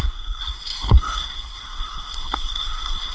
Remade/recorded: remade